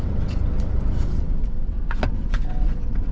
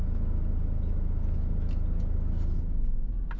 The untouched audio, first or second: second